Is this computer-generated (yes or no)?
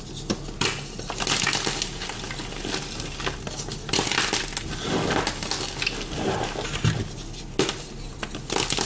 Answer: no